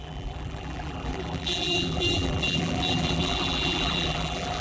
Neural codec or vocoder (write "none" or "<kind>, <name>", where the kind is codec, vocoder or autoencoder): vocoder, BigVGAN v2